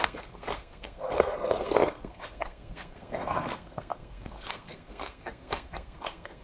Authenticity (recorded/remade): remade